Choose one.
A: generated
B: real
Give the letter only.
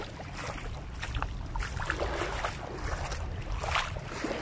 B